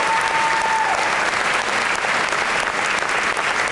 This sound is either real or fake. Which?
real